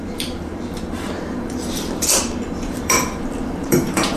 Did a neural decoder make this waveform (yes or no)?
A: yes